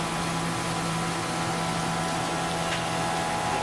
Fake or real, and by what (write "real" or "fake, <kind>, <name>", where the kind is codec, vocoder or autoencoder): real